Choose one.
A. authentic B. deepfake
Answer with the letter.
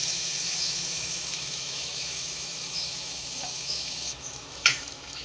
B